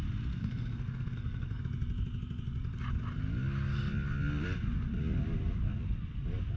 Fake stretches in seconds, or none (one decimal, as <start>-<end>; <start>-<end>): 0.4-1.6